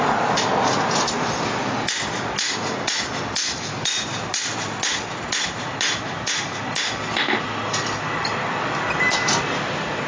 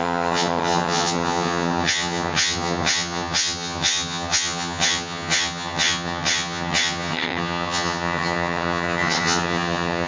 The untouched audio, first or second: first